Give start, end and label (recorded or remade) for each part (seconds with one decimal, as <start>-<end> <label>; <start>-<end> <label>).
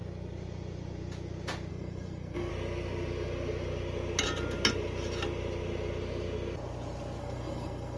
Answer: 0.0-1.7 recorded; 1.7-2.5 remade; 2.5-7.2 recorded; 7.2-8.0 remade